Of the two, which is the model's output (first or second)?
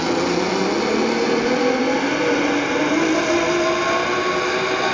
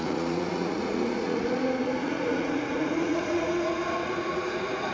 second